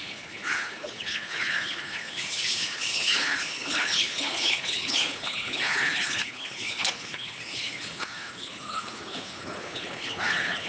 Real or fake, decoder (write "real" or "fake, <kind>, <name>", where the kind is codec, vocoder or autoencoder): fake, codec, HILCodec